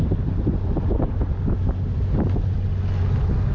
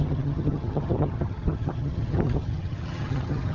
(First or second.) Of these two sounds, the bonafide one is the first